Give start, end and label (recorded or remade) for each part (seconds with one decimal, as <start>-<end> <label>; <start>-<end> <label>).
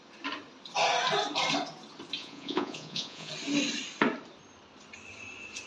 0.0-2.2 recorded; 2.2-3.3 remade; 3.3-5.7 recorded